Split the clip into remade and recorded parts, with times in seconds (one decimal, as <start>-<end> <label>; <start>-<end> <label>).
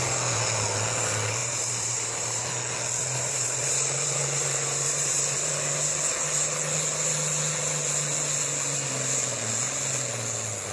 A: 0.0-1.4 recorded; 1.4-2.5 remade; 2.5-3.0 recorded; 3.0-5.5 remade; 5.5-10.7 recorded